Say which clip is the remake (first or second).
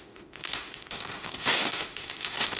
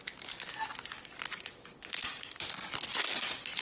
first